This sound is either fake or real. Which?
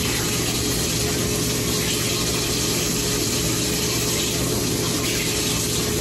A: real